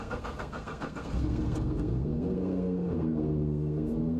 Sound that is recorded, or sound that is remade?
remade